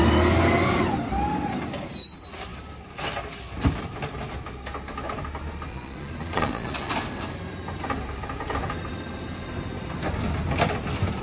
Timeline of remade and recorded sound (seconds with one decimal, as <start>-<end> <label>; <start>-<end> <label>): 0.0-5.7 recorded; 5.7-6.9 remade; 6.9-11.2 recorded